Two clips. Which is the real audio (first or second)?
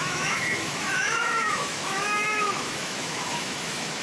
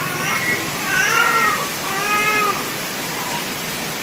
second